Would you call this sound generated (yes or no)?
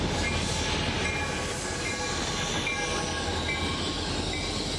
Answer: no